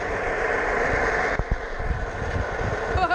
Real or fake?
real